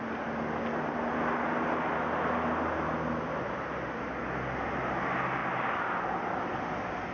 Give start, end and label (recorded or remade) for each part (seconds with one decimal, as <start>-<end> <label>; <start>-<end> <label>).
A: 0.0-7.1 recorded